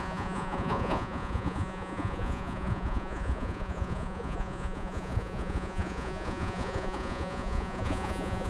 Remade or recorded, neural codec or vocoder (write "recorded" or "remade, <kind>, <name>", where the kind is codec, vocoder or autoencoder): remade, vocoder, Vocos